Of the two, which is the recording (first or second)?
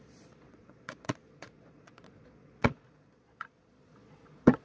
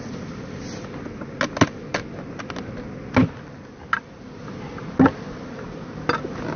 second